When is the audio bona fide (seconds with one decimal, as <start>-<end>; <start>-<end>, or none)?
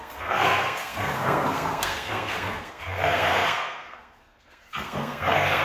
none